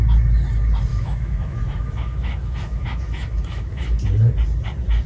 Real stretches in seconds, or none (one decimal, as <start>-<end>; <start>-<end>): 0.0-0.9; 4.0-5.1